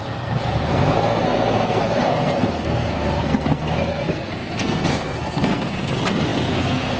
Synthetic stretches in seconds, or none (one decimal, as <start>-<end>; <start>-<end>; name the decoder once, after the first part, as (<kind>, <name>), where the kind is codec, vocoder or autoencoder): 0.0-7.0 (codec, SNAC)